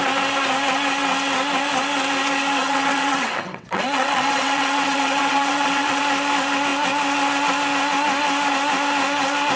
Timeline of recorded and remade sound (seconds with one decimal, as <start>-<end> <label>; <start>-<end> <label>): 0.0-2.6 recorded; 2.6-6.0 remade; 6.0-9.6 recorded